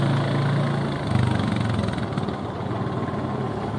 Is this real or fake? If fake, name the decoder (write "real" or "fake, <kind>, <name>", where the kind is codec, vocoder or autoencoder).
real